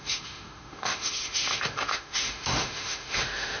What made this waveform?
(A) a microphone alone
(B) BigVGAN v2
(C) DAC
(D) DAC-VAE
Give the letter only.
D